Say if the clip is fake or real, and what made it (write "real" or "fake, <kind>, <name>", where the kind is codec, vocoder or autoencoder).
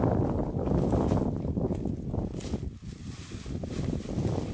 real